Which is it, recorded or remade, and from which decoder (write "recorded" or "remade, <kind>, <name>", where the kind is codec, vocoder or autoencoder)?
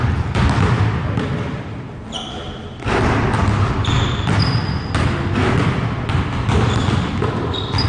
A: remade, vocoder, BigVGAN v2